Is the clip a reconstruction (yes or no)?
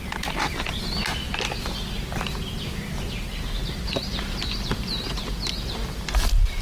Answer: no